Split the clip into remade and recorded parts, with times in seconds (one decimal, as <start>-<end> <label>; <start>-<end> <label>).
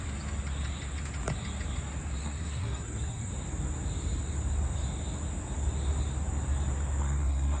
0.0-2.2 recorded; 2.2-3.3 remade; 3.3-7.0 recorded; 7.0-7.6 remade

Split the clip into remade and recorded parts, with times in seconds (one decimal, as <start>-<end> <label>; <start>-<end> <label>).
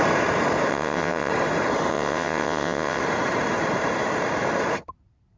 0.0-0.7 recorded; 0.7-1.3 remade; 1.3-1.9 recorded; 1.9-3.0 remade; 3.0-5.4 recorded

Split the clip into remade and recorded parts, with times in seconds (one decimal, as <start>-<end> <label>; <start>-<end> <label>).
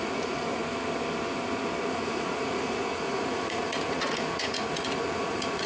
0.0-0.6 remade; 0.6-1.9 recorded; 1.9-5.7 remade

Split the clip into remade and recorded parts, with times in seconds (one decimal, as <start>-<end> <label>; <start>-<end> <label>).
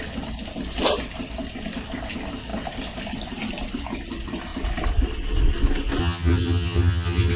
0.0-6.0 recorded; 6.0-7.4 remade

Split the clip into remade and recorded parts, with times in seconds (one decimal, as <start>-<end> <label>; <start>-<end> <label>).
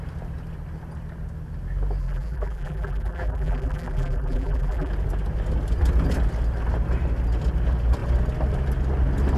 0.0-2.0 recorded; 2.0-4.9 remade; 4.9-9.4 recorded